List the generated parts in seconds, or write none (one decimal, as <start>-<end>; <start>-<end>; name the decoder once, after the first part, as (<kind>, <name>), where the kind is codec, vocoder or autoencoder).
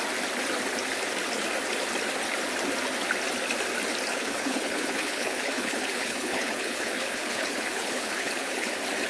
4.1-8.7 (codec, HILCodec)